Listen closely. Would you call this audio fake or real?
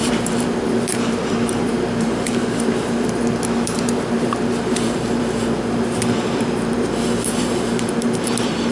fake